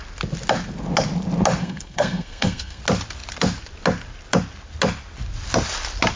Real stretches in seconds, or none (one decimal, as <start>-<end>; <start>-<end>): 0.0-1.6; 2.8-6.2